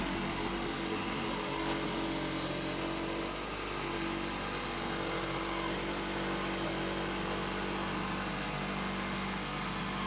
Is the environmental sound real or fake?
real